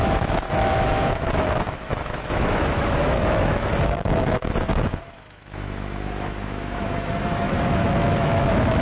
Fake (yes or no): yes